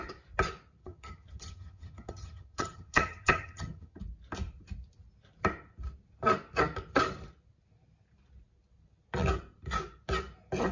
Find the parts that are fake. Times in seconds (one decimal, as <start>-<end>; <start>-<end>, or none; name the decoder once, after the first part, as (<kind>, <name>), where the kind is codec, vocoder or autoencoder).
0.8-4.0 (vocoder, HiFi-GAN)